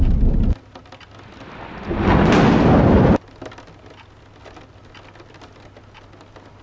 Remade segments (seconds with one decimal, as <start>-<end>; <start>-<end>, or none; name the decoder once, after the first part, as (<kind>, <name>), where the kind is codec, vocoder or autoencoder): none